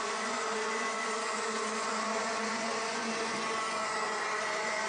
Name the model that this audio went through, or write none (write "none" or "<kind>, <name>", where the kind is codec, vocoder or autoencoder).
vocoder, Vocos